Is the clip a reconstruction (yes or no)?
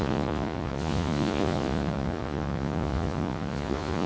yes